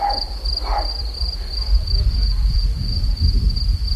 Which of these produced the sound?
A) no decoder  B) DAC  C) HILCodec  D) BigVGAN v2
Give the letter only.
D